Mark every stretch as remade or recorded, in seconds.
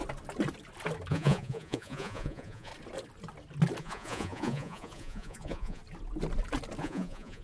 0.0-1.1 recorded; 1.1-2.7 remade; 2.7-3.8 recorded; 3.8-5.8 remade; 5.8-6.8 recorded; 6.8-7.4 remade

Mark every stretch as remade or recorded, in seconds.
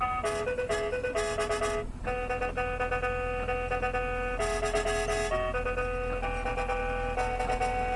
0.0-8.0 recorded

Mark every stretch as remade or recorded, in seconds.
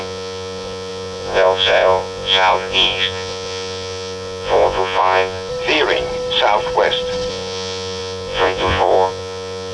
0.0-5.5 remade; 5.5-7.3 recorded; 7.3-9.7 remade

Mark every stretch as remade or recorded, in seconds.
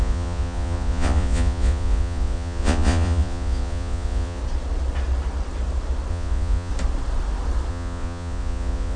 0.0-4.4 remade; 4.4-6.1 recorded; 6.1-6.7 remade; 6.7-7.7 recorded; 7.7-9.0 remade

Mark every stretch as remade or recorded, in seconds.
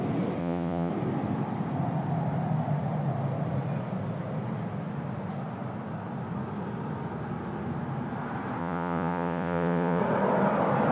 0.0-0.4 recorded; 0.4-0.9 remade; 0.9-8.6 recorded; 8.6-10.0 remade; 10.0-10.9 recorded